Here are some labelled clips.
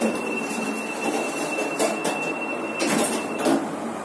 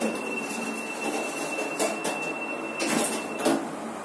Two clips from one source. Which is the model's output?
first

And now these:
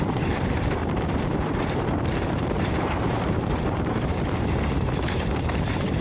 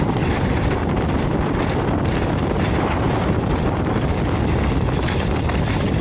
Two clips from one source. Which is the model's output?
first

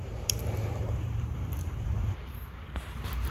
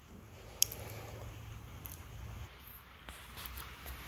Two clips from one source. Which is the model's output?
first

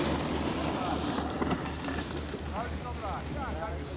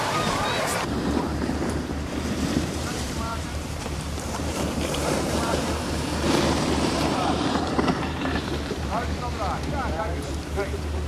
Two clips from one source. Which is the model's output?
second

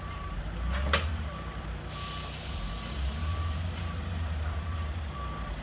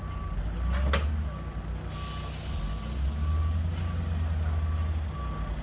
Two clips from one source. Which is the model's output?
first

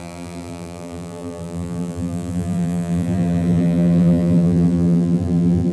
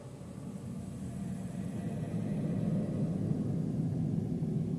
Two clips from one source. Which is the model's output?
first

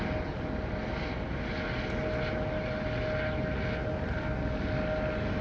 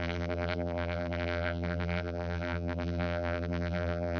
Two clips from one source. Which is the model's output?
second